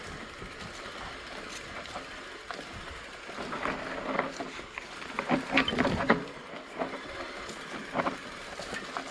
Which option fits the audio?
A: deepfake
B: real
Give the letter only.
B